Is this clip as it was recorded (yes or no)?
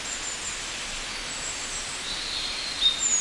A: yes